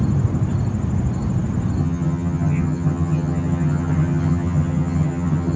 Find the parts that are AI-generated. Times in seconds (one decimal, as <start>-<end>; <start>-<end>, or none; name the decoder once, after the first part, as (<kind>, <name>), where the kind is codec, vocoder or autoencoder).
1.8-5.6 (vocoder, HiFi-GAN)